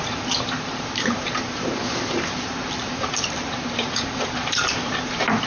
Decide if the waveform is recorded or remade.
remade